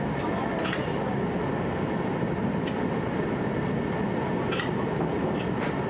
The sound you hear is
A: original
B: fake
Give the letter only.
A